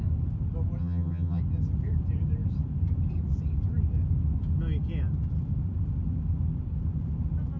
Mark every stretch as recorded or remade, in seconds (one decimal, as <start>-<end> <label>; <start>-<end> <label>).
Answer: 0.0-0.8 recorded; 0.8-1.4 remade; 1.4-7.6 recorded